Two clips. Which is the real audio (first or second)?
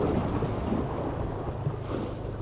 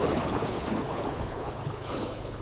first